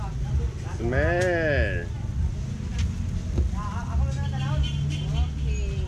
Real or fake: real